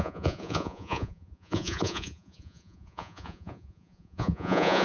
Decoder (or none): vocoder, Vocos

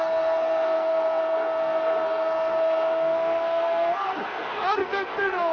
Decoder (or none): codec, SNAC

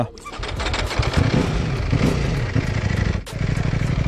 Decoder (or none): none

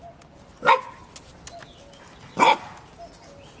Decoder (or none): none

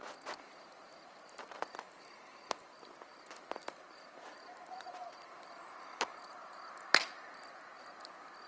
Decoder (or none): none